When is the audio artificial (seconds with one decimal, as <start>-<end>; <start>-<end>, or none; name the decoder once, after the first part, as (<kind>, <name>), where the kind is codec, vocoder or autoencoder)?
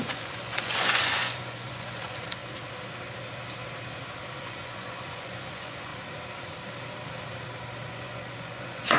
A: 0.0-2.4 (vocoder, Vocos); 4.4-5.9; 7.9-9.0